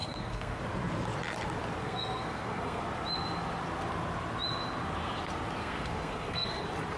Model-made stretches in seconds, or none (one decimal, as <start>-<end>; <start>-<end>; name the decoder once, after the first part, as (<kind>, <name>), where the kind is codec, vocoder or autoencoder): 0.0-0.6 (codec, SNAC); 1.8-2.8; 5.6-6.6